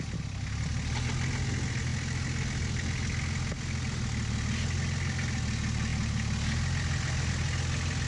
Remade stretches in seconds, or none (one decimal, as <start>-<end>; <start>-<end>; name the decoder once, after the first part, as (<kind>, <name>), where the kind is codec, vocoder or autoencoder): none